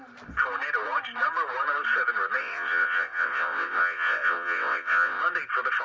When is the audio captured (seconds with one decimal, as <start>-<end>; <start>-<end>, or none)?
0.0-2.4; 5.2-5.8